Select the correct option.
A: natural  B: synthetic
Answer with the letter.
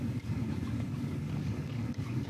B